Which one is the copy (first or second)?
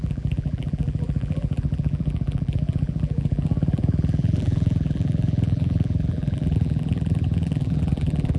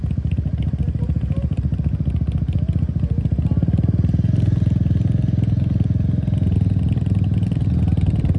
first